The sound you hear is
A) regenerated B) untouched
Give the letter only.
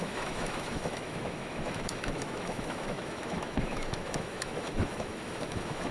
A